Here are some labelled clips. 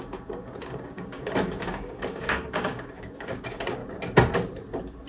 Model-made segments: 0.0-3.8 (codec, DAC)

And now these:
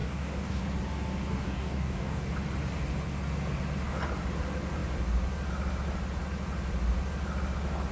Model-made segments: 0.0-0.6 (codec, DAC); 1.3-2.2

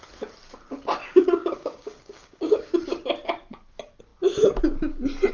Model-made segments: 1.0-2.7 (codec, DAC)